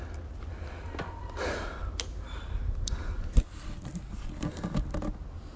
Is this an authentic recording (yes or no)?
yes